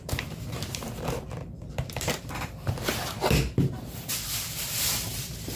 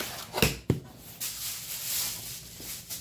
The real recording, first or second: second